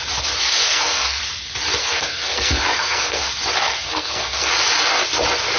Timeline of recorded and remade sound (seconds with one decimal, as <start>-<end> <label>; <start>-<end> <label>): 0.0-0.4 recorded; 0.4-1.2 remade; 1.2-1.8 recorded; 1.8-3.2 remade; 3.2-3.6 recorded; 3.6-4.5 remade; 4.5-5.6 recorded